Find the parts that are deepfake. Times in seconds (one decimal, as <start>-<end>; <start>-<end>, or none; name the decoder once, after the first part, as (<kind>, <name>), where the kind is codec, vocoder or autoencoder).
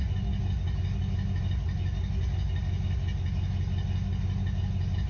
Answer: none